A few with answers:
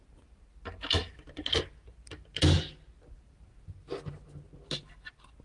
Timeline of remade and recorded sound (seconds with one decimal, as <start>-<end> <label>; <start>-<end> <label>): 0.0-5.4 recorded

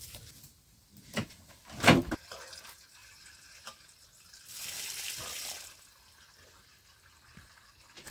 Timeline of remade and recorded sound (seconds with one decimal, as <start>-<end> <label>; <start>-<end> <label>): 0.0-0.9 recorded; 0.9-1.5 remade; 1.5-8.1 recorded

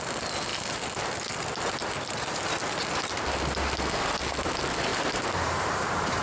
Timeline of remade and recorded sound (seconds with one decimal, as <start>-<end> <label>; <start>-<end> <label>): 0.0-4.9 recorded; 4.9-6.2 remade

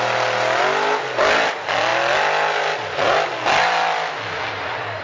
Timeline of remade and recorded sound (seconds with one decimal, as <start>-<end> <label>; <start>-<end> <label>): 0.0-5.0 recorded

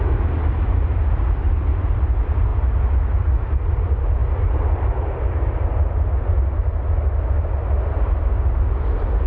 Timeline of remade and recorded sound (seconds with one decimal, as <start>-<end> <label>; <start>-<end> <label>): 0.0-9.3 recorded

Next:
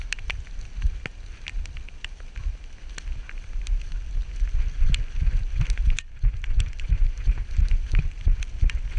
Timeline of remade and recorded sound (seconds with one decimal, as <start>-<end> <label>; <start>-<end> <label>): 0.0-9.0 recorded